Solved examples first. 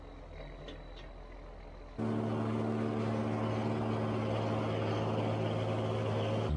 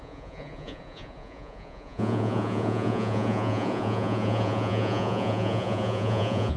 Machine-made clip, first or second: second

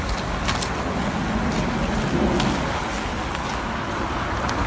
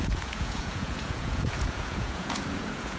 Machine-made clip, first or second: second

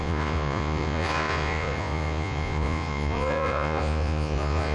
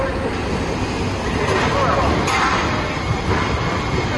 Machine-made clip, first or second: first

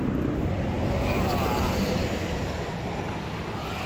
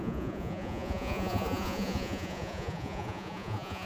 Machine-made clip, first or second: second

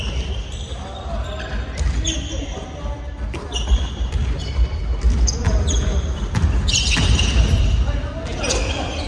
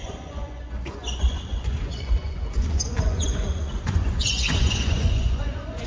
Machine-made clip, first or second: second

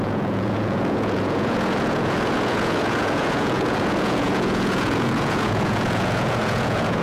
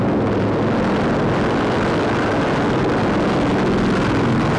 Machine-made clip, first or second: first